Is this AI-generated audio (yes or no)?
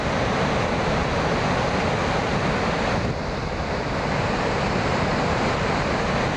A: no